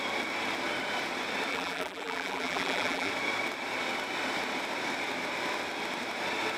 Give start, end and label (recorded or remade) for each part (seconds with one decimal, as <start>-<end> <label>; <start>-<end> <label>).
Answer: 0.0-1.5 recorded; 1.5-3.1 remade; 3.1-6.6 recorded